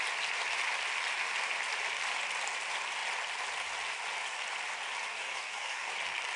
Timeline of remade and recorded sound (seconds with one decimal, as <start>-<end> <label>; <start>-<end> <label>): 0.0-5.1 recorded; 5.1-5.9 remade; 5.9-6.4 recorded